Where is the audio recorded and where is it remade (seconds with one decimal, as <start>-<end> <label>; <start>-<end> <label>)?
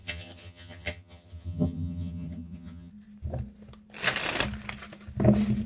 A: 0.0-2.9 remade; 2.9-5.7 recorded